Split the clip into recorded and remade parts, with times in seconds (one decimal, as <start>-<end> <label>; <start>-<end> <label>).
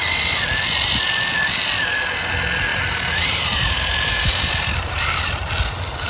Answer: 0.0-2.7 recorded; 2.7-5.5 remade; 5.5-6.1 recorded